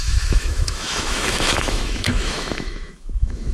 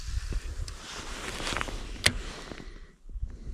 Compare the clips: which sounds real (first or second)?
second